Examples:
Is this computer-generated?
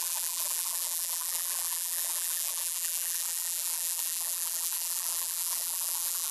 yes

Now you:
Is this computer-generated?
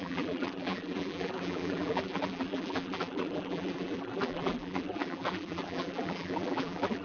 yes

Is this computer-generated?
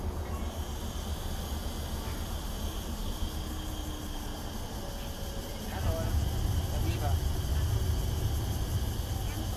no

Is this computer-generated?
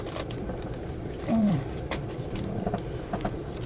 yes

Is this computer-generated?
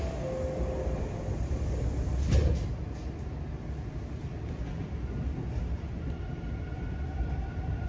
no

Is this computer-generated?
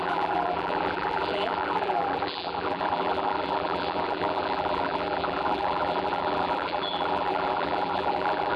yes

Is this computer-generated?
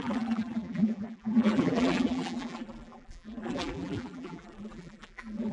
yes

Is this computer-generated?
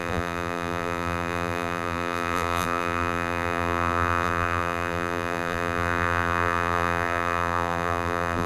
yes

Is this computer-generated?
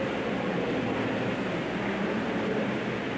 yes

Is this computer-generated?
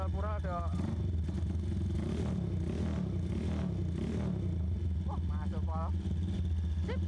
no